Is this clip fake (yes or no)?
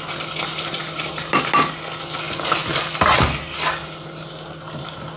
no